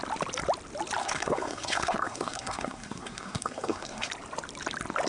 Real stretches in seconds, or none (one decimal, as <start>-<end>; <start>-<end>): 0.0-1.0; 4.1-5.1